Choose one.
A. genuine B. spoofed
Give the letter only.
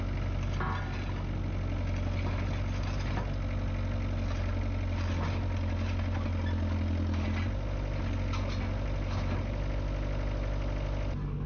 A